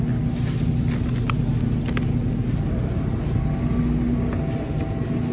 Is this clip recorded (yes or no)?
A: yes